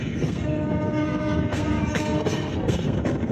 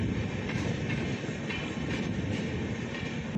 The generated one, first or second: first